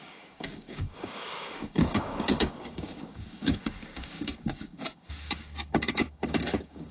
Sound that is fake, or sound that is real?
fake